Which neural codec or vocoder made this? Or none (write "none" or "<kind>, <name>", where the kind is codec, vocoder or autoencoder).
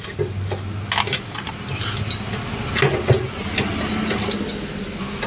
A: none